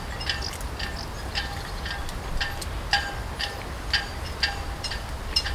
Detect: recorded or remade recorded